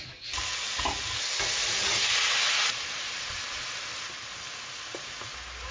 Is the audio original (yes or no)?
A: yes